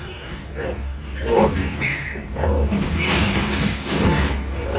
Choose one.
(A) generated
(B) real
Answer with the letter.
A